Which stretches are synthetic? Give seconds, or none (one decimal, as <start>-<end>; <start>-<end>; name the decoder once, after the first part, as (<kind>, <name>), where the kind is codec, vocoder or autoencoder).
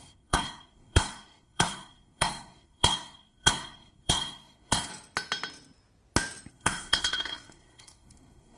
0.0-4.9 (codec, SNAC); 6.5-8.6